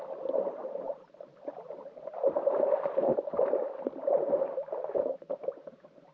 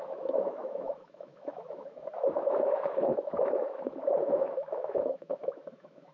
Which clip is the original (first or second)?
first